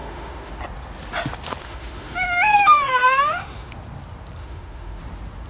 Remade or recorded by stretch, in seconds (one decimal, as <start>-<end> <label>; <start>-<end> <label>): 0.0-0.6 remade; 0.6-1.6 recorded; 1.6-3.7 remade; 3.7-4.4 recorded; 4.4-5.0 remade; 5.0-5.5 recorded